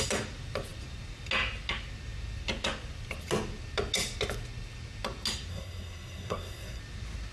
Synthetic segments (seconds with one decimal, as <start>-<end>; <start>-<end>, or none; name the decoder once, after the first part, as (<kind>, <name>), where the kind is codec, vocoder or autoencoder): 5.5-6.8 (codec, SNAC)